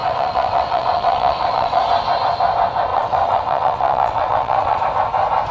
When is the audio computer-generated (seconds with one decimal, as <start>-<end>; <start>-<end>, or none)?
0.0-1.8; 2.9-4.8